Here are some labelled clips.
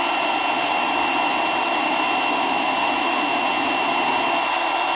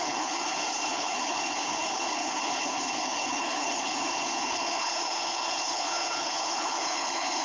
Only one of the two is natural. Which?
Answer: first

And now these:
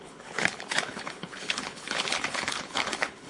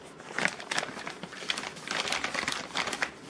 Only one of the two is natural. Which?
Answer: second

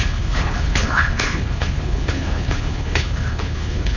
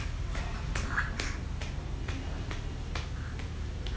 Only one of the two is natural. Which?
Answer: second